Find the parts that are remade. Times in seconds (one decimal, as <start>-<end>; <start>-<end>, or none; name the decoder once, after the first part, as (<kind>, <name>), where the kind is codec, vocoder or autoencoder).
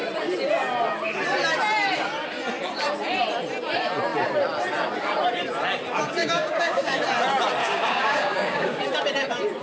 6.2-7.0 (codec, DAC); 7.6-8.8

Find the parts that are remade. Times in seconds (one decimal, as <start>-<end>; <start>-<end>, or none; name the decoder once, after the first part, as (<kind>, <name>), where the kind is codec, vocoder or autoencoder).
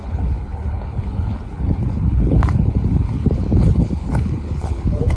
0.0-5.2 (codec, HILCodec)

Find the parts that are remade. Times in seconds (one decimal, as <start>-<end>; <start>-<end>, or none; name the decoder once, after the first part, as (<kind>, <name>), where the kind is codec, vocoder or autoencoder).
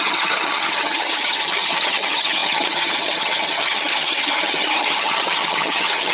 0.0-6.1 (vocoder, HiFi-GAN)